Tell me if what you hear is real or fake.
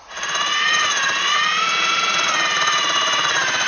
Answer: fake